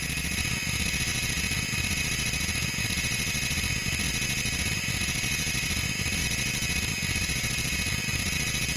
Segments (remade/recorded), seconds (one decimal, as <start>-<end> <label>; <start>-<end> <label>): 0.0-8.8 recorded